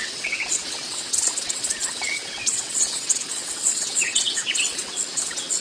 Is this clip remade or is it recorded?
remade